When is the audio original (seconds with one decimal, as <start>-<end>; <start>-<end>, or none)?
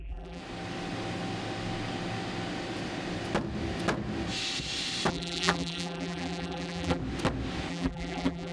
0.4-5.1; 7.0-7.7